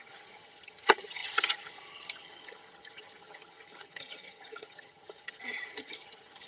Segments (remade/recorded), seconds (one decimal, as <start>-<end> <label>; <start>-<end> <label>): 0.0-6.5 remade